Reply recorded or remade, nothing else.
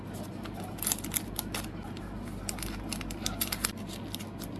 recorded